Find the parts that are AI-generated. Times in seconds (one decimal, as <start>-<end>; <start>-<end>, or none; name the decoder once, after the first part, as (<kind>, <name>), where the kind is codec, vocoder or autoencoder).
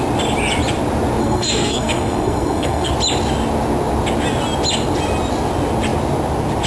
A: 1.2-2.9 (codec, SNAC)